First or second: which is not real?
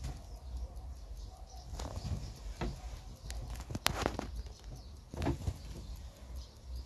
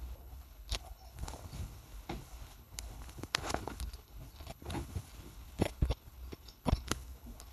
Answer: second